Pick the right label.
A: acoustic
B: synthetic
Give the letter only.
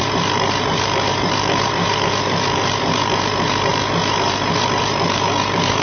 B